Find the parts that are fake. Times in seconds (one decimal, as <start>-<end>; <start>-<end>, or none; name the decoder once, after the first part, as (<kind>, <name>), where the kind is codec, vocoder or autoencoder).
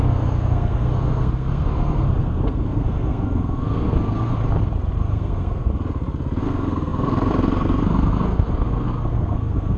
0.0-4.4 (codec, SNAC); 5.1-5.7; 6.4-9.8